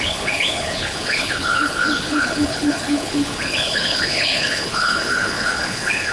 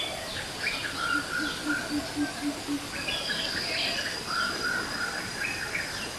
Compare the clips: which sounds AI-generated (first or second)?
first